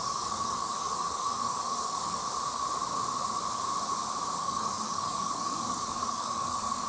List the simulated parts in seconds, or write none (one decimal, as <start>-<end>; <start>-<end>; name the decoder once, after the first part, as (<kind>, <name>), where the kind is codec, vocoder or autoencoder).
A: 0.0-2.2 (codec, DAC); 4.4-6.9